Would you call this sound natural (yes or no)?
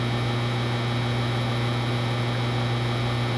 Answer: yes